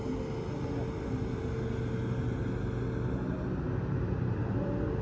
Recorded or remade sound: recorded